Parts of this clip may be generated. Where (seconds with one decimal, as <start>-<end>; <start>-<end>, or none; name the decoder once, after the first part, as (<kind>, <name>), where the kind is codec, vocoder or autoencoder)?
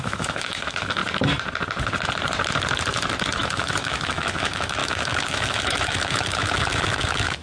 0.0-1.0 (autoencoder, DAC-VAE); 3.3-7.4